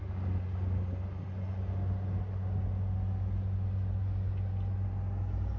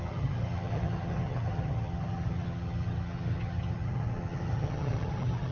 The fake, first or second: second